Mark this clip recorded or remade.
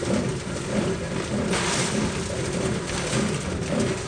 recorded